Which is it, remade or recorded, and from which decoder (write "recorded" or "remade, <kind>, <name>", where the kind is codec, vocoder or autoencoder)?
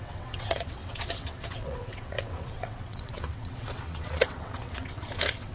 remade, vocoder, WaveNeXt